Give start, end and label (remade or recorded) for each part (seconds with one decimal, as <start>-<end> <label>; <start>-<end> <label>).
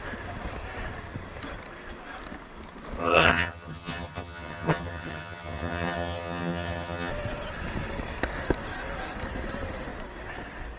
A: 0.0-3.0 recorded; 3.0-7.1 remade; 7.1-10.8 recorded